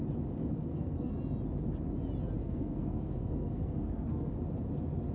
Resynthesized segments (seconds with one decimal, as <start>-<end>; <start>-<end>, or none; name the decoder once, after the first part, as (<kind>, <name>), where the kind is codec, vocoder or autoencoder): 0.4-1.1 (codec, SNAC); 2.4-4.3